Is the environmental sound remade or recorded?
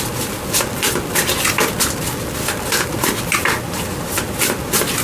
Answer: recorded